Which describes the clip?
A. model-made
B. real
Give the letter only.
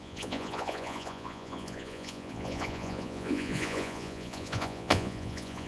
A